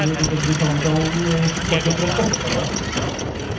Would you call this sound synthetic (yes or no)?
no